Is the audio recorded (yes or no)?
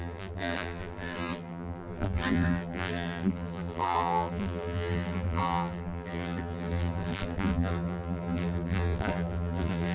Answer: no